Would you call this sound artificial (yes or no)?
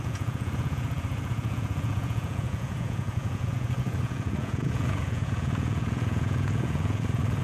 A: yes